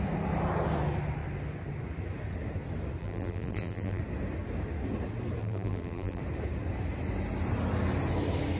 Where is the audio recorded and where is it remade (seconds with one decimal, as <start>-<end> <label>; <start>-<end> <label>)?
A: 0.0-3.0 recorded; 3.0-4.0 remade; 4.0-5.4 recorded; 5.4-6.2 remade; 6.2-8.6 recorded